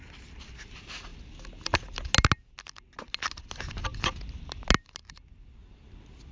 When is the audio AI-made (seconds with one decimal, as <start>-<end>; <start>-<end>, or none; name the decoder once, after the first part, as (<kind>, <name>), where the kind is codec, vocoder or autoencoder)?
none

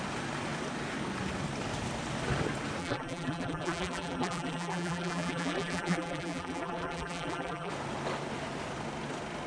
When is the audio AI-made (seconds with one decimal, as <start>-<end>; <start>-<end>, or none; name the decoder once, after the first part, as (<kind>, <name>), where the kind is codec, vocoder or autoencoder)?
2.8-7.7 (vocoder, BigVGAN v2)